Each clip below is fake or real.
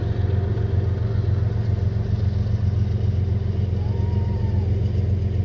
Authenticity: real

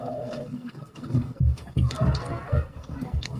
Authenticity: fake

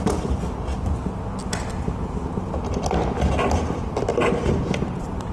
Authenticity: real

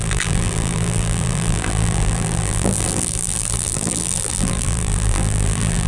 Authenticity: fake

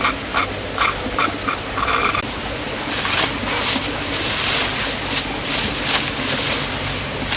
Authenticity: real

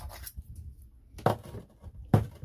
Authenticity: real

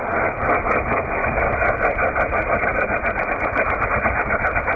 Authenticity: real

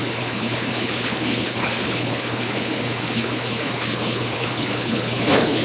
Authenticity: fake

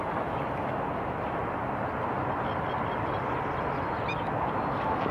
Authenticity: real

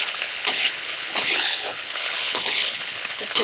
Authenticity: fake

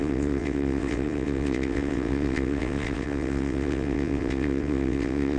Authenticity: fake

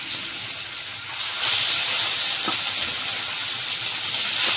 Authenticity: real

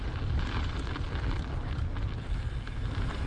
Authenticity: real